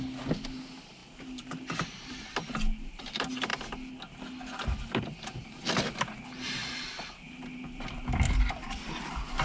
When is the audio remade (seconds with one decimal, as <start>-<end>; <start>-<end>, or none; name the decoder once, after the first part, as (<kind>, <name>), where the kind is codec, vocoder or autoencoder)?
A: 0.0-3.5 (vocoder, BigVGAN v2); 4.9-6.6; 7.7-9.4